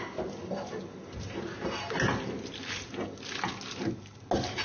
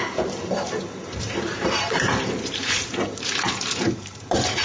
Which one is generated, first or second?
second